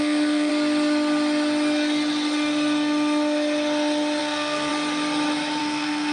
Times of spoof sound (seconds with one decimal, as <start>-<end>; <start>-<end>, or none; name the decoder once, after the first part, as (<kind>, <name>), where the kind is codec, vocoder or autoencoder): 0.0-0.5 (codec, SNAC); 4.2-4.7; 5.6-6.1